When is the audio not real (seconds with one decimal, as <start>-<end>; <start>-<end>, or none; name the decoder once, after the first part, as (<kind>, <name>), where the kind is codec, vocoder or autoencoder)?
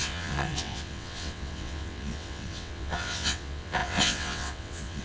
0.0-5.0 (vocoder, WaveNeXt)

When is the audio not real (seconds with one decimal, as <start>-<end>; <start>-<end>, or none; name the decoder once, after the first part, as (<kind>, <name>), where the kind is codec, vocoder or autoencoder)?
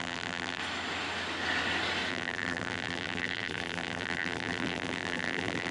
0.0-0.6 (vocoder, BigVGAN v2); 2.1-5.7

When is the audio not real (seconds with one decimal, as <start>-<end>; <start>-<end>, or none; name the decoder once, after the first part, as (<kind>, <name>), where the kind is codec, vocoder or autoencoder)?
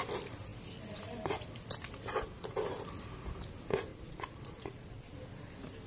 3.9-5.1 (vocoder, Vocos)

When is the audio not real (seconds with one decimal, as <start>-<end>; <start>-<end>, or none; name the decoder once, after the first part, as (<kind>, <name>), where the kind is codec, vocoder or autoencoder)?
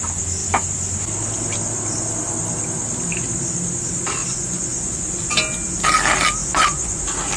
4.2-5.3 (vocoder, Vocos); 6.4-7.0